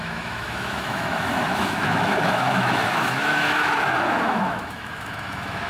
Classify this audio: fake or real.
fake